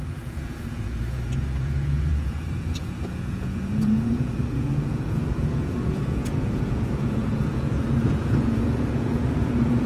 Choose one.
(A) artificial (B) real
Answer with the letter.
A